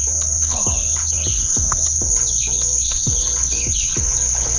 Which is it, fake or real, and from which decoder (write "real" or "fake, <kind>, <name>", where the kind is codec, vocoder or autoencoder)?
fake, codec, HILCodec